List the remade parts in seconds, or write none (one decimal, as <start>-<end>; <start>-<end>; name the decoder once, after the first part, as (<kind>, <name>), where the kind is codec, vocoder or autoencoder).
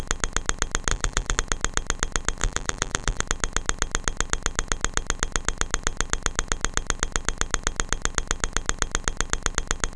0.9-1.4 (vocoder, BigVGAN v2); 2.4-3.2